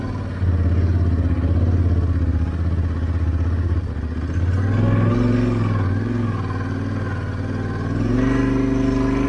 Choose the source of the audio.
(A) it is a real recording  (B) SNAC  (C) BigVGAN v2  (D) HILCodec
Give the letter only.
A